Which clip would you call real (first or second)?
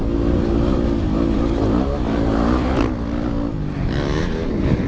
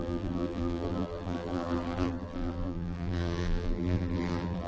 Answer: first